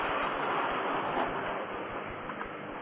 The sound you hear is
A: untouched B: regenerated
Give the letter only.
B